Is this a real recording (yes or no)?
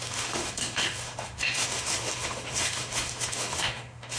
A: no